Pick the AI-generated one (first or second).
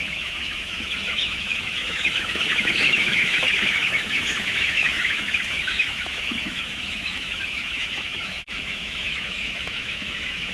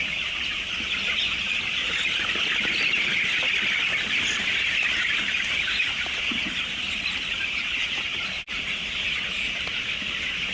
first